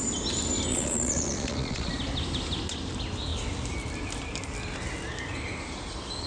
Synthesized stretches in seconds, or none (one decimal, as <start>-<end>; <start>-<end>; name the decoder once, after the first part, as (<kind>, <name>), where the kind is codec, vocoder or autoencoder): 0.7-1.9 (vocoder, Vocos)